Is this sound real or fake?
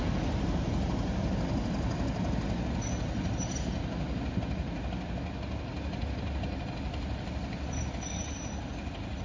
real